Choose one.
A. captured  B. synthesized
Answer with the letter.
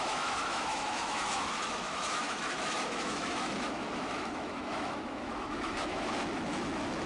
B